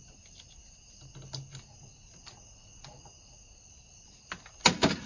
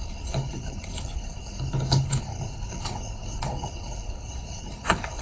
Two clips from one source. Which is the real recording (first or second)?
first